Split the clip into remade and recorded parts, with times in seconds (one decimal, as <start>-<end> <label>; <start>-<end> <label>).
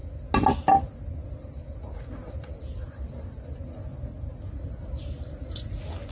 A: 0.0-6.1 recorded